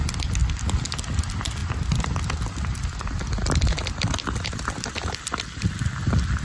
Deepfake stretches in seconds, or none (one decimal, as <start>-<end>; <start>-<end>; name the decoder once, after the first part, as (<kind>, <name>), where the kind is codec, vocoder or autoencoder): none